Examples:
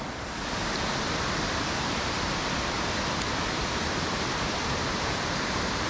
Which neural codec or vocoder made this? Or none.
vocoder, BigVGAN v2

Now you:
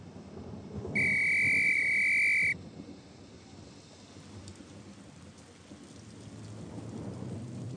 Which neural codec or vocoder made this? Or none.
none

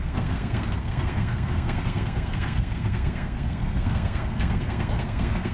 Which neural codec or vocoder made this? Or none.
codec, SNAC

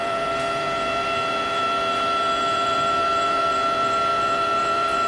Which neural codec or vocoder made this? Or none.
vocoder, Vocos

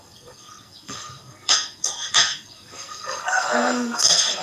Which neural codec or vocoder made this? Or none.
codec, SNAC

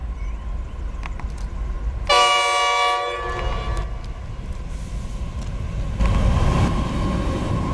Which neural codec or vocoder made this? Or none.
none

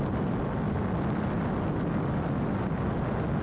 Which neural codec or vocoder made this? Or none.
none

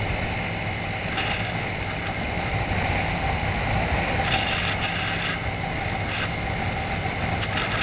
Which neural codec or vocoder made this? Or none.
none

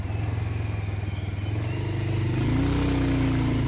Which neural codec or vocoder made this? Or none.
none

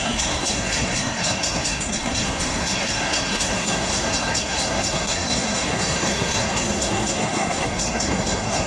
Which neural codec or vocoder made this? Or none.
codec, SNAC